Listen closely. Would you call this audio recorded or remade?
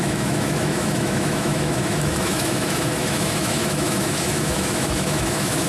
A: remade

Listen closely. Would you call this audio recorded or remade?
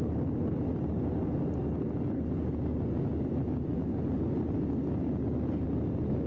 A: recorded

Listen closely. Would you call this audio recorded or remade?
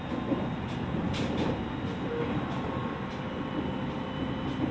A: recorded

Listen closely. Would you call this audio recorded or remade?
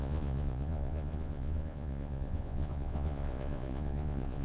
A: remade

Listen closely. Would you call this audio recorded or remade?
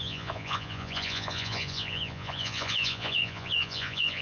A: remade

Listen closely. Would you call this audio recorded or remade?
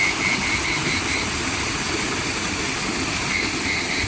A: recorded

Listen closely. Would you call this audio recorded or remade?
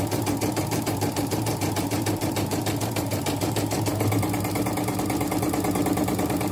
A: remade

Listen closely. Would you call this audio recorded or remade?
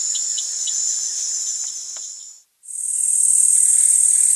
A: recorded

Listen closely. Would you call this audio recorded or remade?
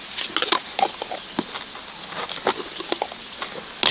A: recorded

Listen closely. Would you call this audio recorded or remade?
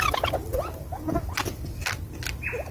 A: recorded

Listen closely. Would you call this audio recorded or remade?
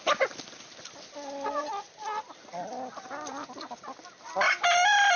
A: recorded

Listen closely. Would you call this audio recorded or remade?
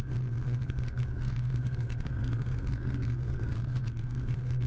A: remade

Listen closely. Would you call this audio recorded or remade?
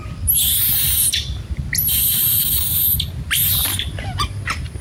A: recorded